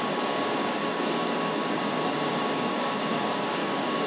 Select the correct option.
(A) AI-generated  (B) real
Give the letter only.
A